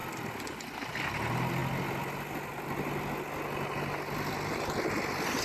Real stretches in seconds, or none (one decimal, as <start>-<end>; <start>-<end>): 0.0-5.4